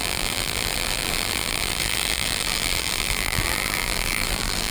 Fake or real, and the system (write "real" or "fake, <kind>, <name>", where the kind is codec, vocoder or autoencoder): fake, vocoder, BigVGAN v2